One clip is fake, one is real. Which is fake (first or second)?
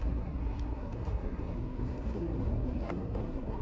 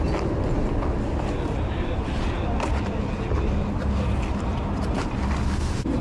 first